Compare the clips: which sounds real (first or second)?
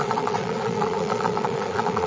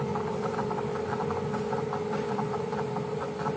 second